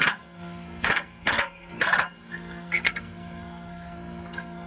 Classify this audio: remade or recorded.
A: remade